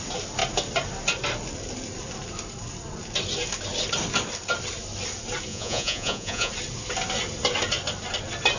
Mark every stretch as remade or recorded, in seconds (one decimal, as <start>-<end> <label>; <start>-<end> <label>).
0.0-5.5 recorded; 5.5-6.5 remade; 6.5-8.6 recorded